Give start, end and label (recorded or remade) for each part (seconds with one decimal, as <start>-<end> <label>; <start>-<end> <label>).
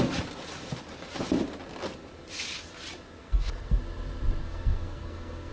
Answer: 0.0-3.2 recorded; 3.2-3.8 remade; 3.8-4.4 recorded; 4.4-5.5 remade